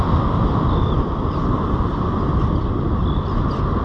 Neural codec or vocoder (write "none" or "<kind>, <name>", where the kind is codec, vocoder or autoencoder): none